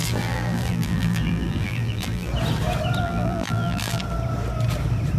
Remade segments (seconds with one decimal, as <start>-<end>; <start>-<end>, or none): 0.0-2.3; 3.0-4.0